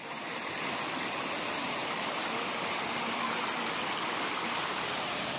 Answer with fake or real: real